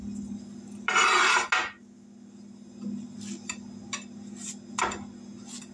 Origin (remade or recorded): recorded